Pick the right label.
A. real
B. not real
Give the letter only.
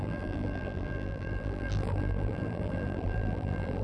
B